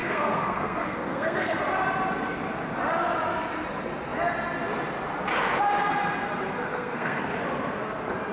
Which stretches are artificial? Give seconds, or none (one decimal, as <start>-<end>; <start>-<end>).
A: 0.0-1.6; 6.7-7.2